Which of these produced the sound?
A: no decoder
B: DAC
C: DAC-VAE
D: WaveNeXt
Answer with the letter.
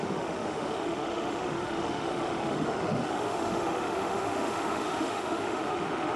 C